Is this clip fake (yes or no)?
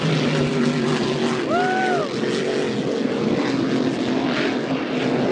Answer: no